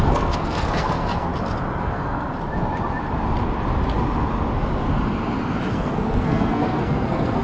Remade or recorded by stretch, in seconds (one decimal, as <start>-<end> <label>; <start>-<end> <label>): 0.0-1.3 remade; 1.3-1.8 recorded; 1.8-2.3 remade; 2.3-5.7 recorded; 5.7-7.4 remade